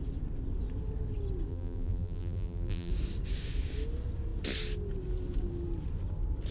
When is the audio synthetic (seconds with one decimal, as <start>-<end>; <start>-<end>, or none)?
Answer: 1.5-2.9